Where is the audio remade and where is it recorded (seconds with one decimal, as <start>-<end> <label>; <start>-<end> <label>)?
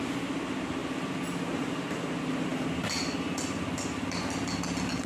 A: 0.0-5.1 recorded